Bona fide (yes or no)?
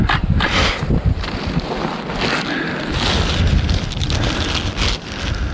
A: yes